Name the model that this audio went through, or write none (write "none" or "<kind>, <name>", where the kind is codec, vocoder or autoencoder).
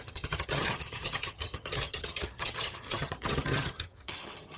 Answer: vocoder, HiFi-GAN